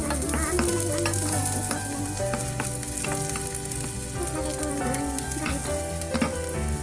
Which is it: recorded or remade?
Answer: recorded